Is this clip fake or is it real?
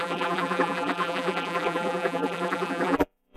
fake